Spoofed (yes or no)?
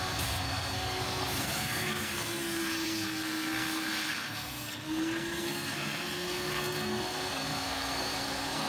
yes